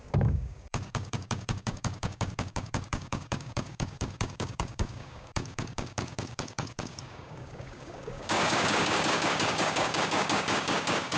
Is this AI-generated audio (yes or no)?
yes